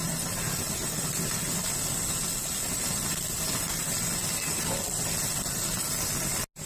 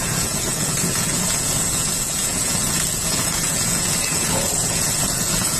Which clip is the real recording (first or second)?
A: first